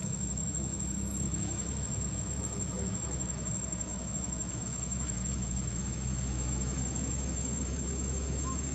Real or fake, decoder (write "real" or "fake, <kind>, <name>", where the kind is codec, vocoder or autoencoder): fake, autoencoder, DAC-VAE